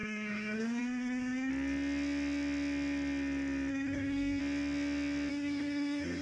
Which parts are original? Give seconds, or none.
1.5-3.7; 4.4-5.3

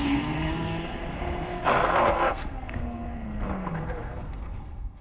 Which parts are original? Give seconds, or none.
none